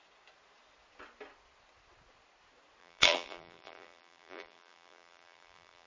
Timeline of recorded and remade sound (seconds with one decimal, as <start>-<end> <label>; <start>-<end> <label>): 0.0-2.8 recorded; 2.8-5.9 remade